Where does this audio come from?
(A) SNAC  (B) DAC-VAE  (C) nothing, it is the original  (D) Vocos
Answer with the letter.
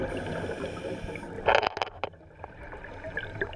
C